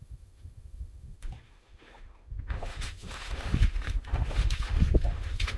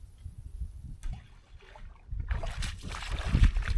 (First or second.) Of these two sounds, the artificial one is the first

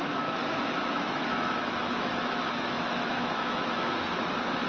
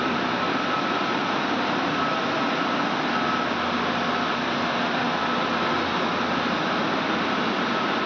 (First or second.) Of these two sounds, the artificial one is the first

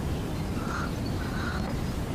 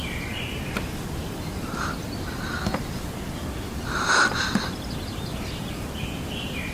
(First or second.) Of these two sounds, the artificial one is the second